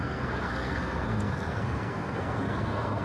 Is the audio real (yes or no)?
no